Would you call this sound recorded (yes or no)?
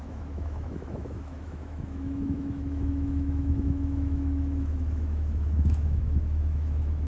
no